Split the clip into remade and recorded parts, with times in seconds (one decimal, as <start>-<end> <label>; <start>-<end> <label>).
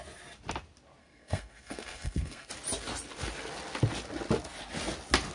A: 0.0-1.0 recorded; 1.0-2.5 remade; 2.5-5.3 recorded